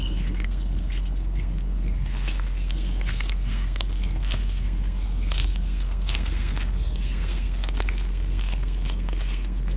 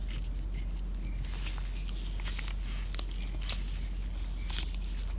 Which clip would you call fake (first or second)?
first